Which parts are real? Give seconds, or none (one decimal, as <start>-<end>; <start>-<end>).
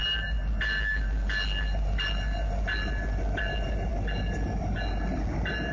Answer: 0.0-5.7